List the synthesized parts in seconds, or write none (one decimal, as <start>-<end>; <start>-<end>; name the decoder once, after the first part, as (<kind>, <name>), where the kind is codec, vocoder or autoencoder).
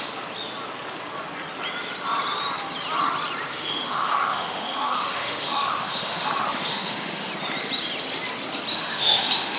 3.5-7.3 (autoencoder, DAC-VAE); 8.7-9.6